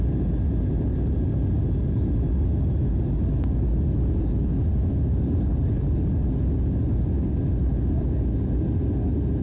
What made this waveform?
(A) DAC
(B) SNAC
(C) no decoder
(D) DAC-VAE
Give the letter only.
C